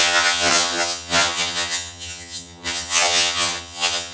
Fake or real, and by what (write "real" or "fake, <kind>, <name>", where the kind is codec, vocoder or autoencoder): fake, vocoder, HiFi-GAN